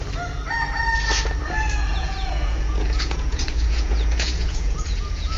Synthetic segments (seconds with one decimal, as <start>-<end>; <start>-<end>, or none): 1.9-5.4